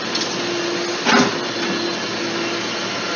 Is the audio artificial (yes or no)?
no